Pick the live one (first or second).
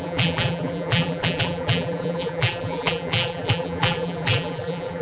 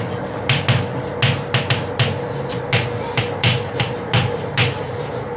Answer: second